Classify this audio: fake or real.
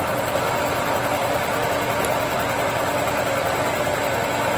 real